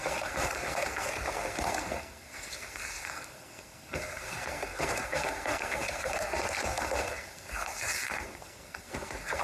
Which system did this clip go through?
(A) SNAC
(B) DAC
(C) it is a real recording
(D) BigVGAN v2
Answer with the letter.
A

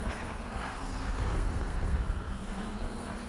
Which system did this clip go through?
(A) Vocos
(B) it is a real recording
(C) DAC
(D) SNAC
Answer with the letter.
D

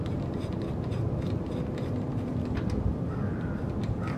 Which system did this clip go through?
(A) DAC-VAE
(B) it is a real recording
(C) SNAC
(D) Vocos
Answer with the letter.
B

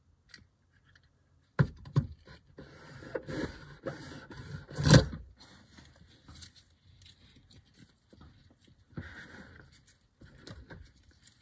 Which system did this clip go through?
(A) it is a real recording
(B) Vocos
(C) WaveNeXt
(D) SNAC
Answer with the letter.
A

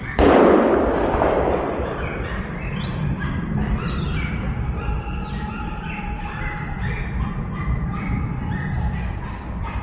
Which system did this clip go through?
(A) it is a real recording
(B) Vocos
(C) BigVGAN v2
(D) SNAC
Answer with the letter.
A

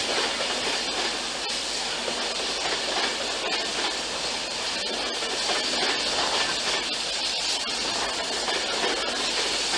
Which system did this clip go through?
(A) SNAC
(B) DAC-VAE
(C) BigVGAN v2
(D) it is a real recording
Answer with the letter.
D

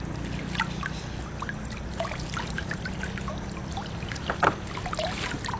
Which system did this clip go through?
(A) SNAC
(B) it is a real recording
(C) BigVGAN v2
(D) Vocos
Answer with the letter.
B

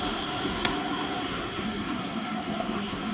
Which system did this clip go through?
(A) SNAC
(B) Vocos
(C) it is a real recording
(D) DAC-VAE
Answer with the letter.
A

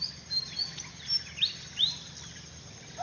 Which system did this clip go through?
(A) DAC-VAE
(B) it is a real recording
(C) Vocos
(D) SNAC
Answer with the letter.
B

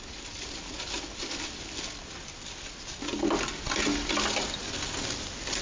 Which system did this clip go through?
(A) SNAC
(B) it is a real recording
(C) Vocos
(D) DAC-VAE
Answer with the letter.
B